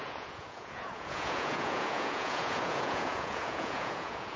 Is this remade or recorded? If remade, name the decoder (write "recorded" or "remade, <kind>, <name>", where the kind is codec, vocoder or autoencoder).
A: remade, vocoder, Vocos